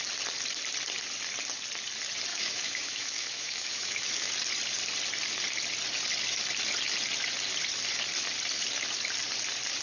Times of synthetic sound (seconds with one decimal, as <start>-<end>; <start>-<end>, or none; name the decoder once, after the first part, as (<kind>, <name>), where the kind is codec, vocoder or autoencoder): 2.3-4.3 (autoencoder, DAC-VAE)